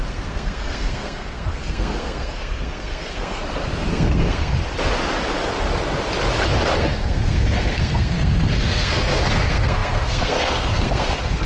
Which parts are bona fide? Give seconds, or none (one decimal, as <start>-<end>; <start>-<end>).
3.4-3.9; 4.5-6.8